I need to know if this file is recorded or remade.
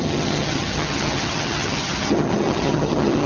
remade